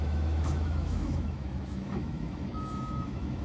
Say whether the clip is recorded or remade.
remade